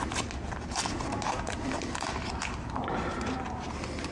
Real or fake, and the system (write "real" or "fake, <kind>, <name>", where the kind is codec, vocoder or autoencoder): real